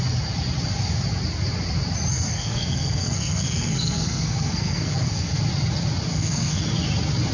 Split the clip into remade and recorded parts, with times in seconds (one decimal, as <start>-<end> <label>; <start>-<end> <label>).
0.0-2.1 recorded; 2.1-5.4 remade; 5.4-6.1 recorded; 6.1-6.6 remade; 6.6-7.3 recorded